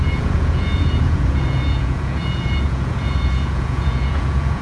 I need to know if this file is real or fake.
fake